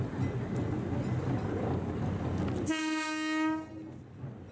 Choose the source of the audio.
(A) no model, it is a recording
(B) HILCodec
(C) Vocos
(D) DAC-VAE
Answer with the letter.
A